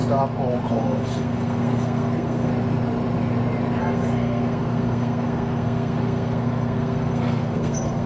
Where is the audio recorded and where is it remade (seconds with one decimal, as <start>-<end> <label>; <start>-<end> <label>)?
0.0-0.7 recorded; 0.7-2.5 remade; 2.5-3.8 recorded; 3.8-8.1 remade